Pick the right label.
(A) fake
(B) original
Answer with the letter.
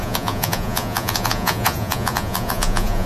A